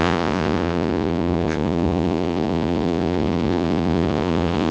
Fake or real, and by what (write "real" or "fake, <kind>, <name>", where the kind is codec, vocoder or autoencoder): fake, vocoder, Vocos